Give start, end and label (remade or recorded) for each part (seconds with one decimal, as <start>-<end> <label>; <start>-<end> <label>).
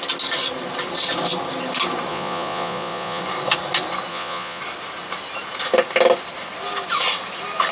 0.0-2.1 recorded; 2.1-3.2 remade; 3.2-4.1 recorded; 4.1-4.6 remade; 4.6-7.7 recorded